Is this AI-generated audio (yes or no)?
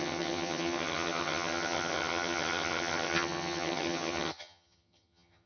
yes